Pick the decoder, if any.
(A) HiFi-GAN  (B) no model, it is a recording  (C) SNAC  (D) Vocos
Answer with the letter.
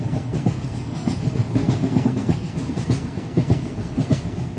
C